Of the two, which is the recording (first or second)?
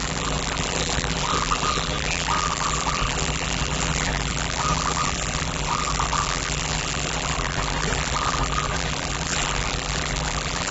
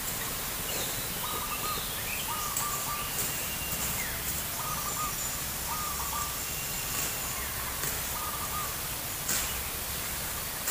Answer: second